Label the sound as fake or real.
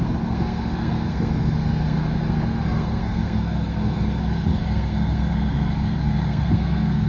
fake